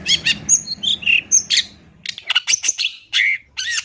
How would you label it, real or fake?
real